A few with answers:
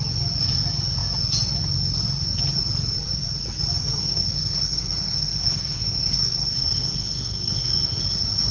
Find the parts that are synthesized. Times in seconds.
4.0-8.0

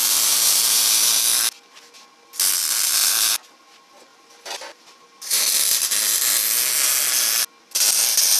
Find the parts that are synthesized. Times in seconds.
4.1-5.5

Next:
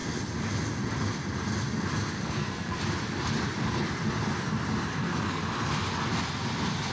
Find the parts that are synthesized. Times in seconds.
2.2-2.8; 5.0-5.4